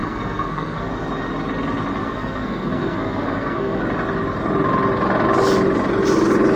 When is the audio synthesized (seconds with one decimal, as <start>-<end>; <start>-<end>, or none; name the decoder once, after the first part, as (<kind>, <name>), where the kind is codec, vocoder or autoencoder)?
0.0-0.9 (codec, SNAC); 2.0-3.8